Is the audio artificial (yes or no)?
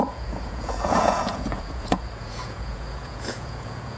yes